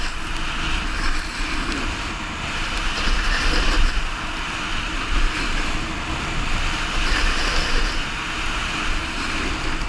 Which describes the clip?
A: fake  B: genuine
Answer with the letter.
B